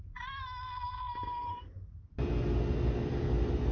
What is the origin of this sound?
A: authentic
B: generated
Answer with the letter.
A